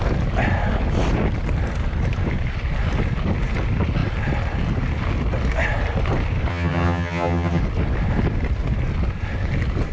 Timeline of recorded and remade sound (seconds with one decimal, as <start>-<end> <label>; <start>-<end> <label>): 0.0-6.5 recorded; 6.5-7.6 remade; 7.6-9.9 recorded

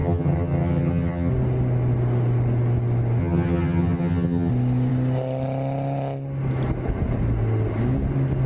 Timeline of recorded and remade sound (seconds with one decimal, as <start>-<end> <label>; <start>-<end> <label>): 0.0-1.3 remade; 1.3-3.2 recorded; 3.2-4.5 remade; 4.5-8.5 recorded

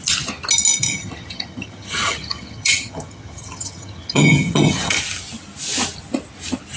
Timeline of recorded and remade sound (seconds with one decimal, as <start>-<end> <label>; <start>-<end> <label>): 0.0-0.9 recorded; 0.9-5.0 remade; 5.0-6.8 recorded

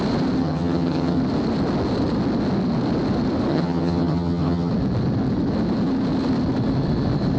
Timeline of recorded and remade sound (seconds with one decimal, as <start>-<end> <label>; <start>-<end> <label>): 0.0-0.4 recorded; 0.4-1.2 remade; 1.2-3.5 recorded; 3.5-4.7 remade; 4.7-7.4 recorded

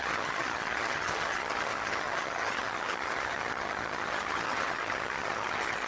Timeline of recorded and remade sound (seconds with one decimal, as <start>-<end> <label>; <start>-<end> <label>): 0.0-5.9 remade

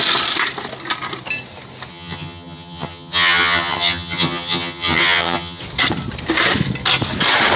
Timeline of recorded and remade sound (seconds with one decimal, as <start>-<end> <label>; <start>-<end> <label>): 0.0-1.9 recorded; 1.9-5.6 remade; 5.6-7.6 recorded

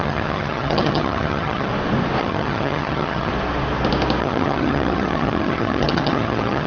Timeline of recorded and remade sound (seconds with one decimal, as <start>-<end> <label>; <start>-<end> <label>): 0.0-1.7 remade; 1.7-2.2 recorded; 2.2-3.3 remade; 3.3-4.2 recorded; 4.2-6.7 remade